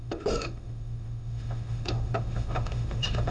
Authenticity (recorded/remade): remade